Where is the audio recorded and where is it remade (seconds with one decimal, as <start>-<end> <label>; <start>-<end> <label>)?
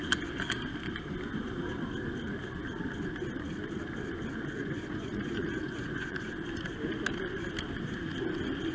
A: 0.0-4.6 recorded; 4.6-6.3 remade; 6.3-8.7 recorded